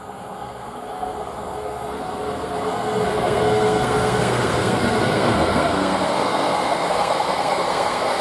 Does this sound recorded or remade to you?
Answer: remade